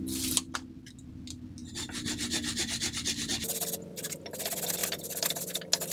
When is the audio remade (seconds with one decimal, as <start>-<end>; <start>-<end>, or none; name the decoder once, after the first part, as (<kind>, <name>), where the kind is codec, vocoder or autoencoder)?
none